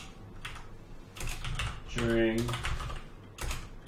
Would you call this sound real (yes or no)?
yes